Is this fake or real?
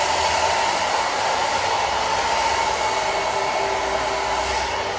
real